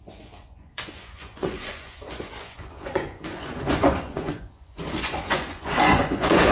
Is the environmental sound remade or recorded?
remade